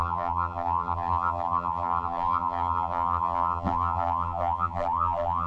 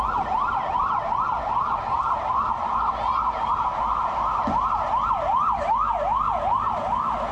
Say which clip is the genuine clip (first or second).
second